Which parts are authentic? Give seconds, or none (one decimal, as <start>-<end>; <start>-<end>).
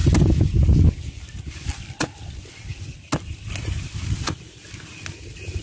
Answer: 0.0-5.6